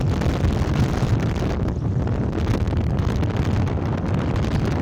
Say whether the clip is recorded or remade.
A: recorded